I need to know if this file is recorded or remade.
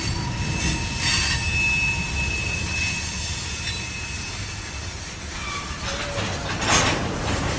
recorded